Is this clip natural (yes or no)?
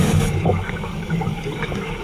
no